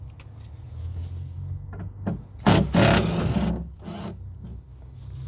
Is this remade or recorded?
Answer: recorded